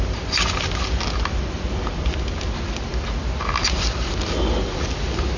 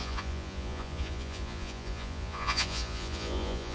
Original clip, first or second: first